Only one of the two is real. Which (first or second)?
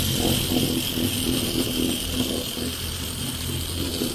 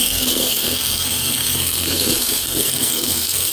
first